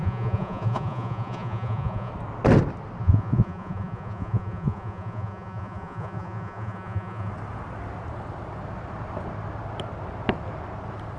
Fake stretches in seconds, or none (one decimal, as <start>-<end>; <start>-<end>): 0.0-2.1; 3.0-7.3